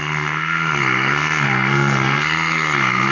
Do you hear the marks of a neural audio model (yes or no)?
yes